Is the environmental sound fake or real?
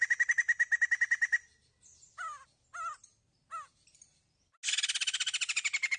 real